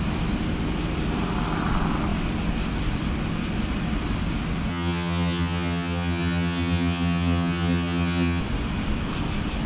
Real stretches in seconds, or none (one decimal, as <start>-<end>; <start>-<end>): 0.0-4.7; 8.4-9.7